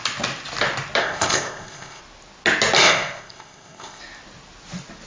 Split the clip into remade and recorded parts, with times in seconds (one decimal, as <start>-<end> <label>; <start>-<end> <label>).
0.0-1.0 recorded; 1.0-2.0 remade; 2.0-2.8 recorded; 2.8-4.0 remade; 4.0-5.1 recorded